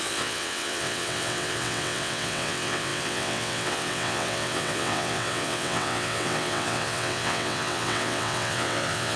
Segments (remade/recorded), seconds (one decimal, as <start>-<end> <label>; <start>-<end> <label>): 0.0-9.2 remade